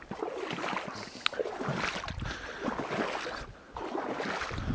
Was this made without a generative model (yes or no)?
yes